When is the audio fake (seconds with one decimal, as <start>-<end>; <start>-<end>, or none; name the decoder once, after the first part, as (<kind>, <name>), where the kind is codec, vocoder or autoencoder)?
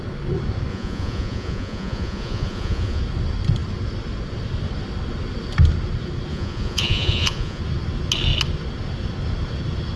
0.7-3.0 (vocoder, Vocos); 6.3-7.6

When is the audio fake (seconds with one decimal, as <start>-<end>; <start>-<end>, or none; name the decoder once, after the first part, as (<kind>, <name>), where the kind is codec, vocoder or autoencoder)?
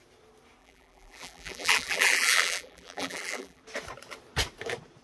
0.6-3.6 (vocoder, BigVGAN v2)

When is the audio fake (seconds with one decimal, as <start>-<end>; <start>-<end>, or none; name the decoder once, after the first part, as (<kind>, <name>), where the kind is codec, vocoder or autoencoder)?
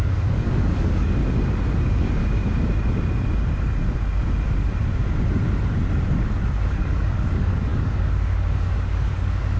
0.0-1.2 (codec, DAC); 1.8-2.2; 6.7-9.6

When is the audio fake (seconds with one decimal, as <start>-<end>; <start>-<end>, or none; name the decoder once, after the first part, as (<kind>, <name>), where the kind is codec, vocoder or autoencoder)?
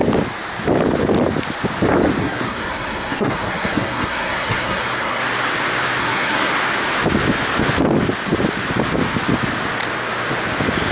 2.2-5.2 (codec, SNAC); 6.0-6.5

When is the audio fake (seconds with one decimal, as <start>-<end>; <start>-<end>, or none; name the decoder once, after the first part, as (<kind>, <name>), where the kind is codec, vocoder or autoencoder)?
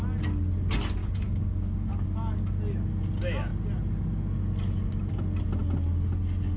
1.0-2.6 (codec, DAC)